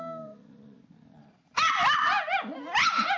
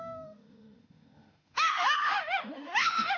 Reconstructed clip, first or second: second